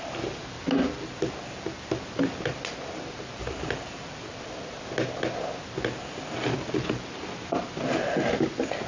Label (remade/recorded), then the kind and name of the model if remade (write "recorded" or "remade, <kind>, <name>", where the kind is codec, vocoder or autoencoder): recorded